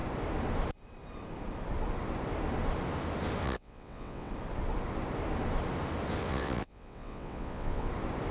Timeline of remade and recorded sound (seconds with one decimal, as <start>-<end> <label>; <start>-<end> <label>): 0.0-3.4 recorded; 3.4-4.3 remade; 4.3-6.2 recorded; 6.2-7.9 remade; 7.9-8.3 recorded